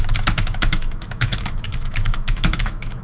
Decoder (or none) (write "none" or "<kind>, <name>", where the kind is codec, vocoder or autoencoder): autoencoder, DAC-VAE